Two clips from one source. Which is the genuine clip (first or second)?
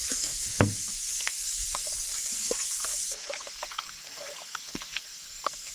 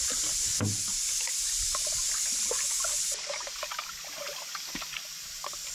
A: second